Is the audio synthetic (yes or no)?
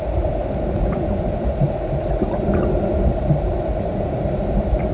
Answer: no